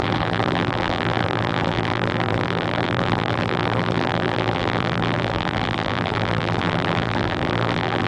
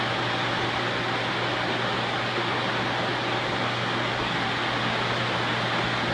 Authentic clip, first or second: second